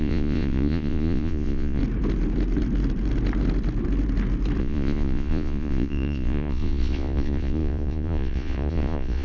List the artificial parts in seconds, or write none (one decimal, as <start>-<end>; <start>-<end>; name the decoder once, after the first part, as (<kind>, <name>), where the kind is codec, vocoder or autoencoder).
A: 0.0-1.8 (vocoder, Vocos); 4.6-9.2